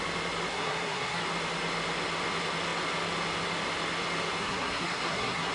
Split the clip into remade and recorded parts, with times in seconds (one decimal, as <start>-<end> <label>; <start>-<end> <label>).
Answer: 0.0-0.5 recorded; 0.5-1.2 remade; 1.2-4.4 recorded; 4.4-5.5 remade

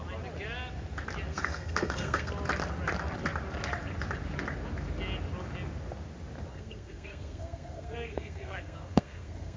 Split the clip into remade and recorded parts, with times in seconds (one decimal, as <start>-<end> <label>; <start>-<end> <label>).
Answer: 0.0-1.3 recorded; 1.3-2.3 remade; 2.3-6.5 recorded; 6.5-9.6 remade

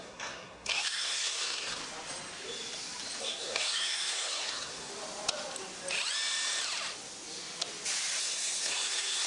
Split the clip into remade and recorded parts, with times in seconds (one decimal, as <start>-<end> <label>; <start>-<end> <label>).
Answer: 0.0-1.8 remade; 1.8-3.2 recorded; 3.2-4.9 remade; 4.9-8.2 recorded; 8.2-9.3 remade

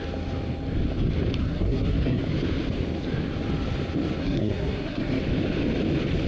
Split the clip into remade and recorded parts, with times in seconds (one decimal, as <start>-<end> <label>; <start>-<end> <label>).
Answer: 0.0-1.4 recorded; 1.4-2.2 remade; 2.2-4.2 recorded; 4.2-5.2 remade; 5.2-6.3 recorded